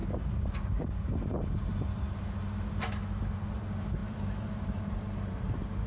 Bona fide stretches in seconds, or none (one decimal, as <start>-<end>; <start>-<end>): 0.0-3.5